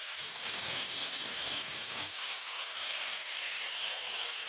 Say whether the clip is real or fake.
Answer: fake